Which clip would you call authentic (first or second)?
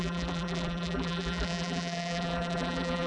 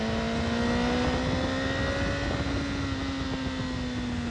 second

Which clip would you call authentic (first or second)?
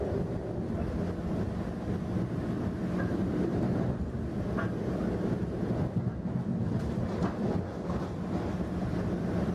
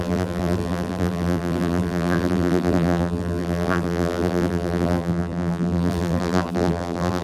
first